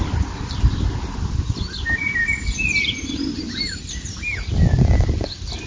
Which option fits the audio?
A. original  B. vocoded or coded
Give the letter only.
A